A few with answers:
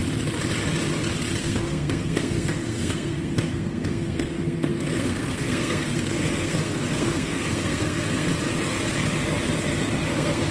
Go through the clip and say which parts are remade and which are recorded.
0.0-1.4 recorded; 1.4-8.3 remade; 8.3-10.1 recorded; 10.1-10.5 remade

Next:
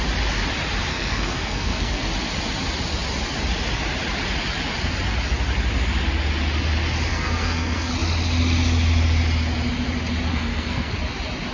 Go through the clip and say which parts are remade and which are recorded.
0.0-0.9 recorded; 0.9-2.0 remade; 2.0-7.1 recorded; 7.1-7.9 remade; 7.9-10.3 recorded; 10.3-10.9 remade; 10.9-11.5 recorded

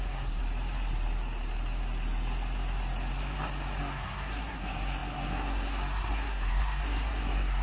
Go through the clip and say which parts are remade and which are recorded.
0.0-0.4 remade; 0.4-3.8 recorded; 3.8-7.6 remade

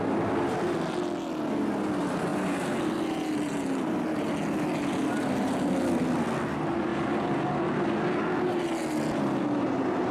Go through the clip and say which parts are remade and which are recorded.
0.0-10.1 recorded

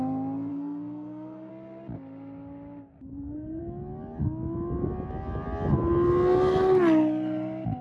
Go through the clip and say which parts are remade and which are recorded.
0.0-0.5 recorded; 0.5-1.5 remade; 1.5-3.1 recorded; 3.1-3.6 remade; 3.6-7.8 recorded

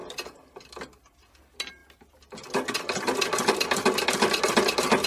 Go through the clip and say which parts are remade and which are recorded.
0.0-5.1 recorded

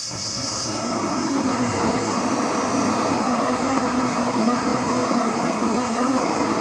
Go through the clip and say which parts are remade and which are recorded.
0.0-2.2 remade; 2.2-3.1 recorded; 3.1-6.6 remade

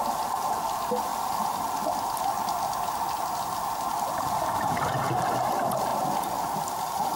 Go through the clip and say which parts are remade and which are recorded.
0.0-7.2 recorded